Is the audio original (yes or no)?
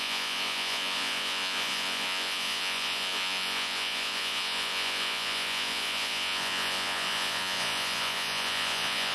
no